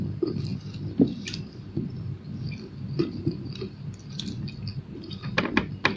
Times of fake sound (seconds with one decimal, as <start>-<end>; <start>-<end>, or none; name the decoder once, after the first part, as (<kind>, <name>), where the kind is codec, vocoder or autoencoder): none